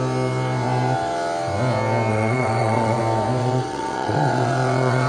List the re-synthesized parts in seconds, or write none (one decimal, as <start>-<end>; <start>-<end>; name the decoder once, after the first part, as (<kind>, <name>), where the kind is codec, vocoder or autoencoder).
2.1-3.0 (vocoder, WaveNeXt); 3.4-5.1

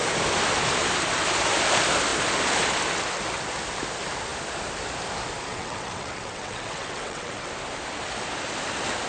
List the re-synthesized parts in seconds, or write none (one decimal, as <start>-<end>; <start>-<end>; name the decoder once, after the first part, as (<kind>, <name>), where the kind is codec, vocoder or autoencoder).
5.5-7.5 (vocoder, WaveNeXt)

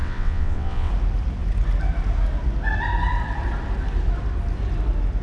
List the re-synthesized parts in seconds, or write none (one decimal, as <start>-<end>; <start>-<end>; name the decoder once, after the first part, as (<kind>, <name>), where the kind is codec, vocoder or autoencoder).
0.0-0.9 (vocoder, WaveNeXt)

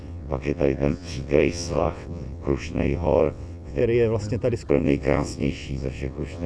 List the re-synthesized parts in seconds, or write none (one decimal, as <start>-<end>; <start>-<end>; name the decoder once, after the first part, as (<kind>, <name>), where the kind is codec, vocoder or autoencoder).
0.0-3.8 (vocoder, WaveNeXt); 4.7-6.5